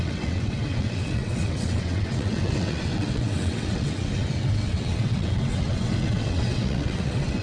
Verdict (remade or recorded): remade